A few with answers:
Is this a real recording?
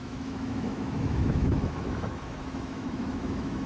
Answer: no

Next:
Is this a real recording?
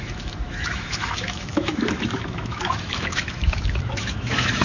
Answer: no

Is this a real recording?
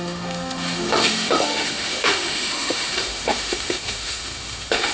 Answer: no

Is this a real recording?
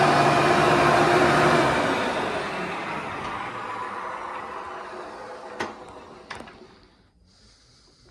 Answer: yes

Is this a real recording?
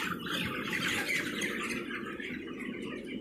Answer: yes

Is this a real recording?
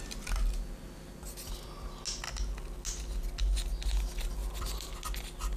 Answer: yes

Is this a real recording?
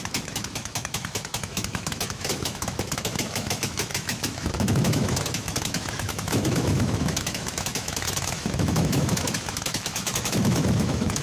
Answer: no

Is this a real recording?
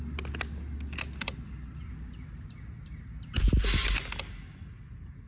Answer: yes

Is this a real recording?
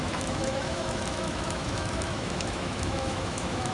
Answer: no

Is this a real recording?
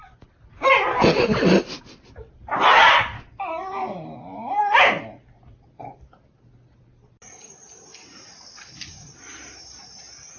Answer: yes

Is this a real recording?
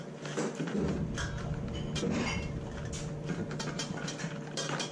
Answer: yes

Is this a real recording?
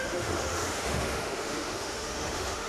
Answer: no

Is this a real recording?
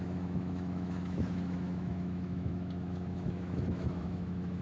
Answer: no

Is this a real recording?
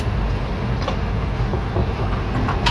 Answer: yes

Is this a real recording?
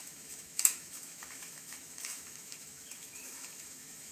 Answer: no